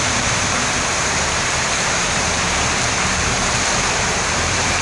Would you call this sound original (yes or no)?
no